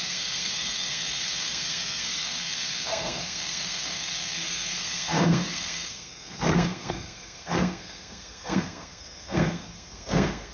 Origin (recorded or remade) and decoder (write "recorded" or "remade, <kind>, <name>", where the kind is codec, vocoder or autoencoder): remade, codec, SNAC